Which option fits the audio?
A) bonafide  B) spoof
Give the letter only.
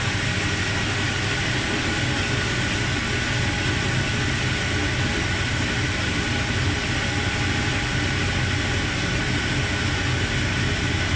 A